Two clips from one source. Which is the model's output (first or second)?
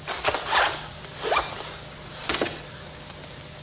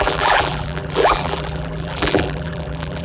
second